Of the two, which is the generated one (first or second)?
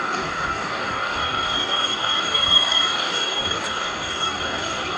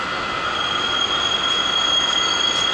first